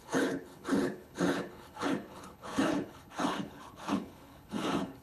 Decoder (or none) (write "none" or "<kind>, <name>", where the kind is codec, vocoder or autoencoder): codec, HILCodec